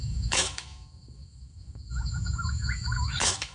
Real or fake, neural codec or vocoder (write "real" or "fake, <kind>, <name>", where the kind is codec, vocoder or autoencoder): fake, autoencoder, DAC-VAE